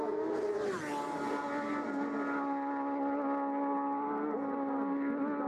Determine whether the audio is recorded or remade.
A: recorded